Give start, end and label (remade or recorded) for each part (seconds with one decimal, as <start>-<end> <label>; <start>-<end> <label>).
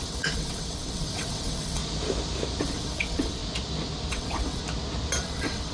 0.0-1.8 remade; 1.8-2.6 recorded; 2.6-3.4 remade; 3.4-4.1 recorded; 4.1-4.6 remade; 4.6-5.2 recorded; 5.2-5.7 remade